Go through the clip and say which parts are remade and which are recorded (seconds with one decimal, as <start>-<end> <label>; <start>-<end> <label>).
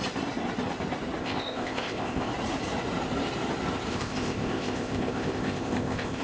0.0-1.2 recorded; 1.2-2.3 remade; 2.3-3.9 recorded; 3.9-6.2 remade